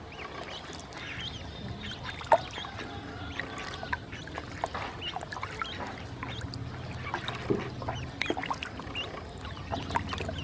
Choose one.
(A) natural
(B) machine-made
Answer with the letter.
A